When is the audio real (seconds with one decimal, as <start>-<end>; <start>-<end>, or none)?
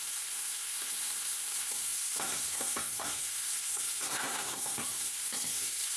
none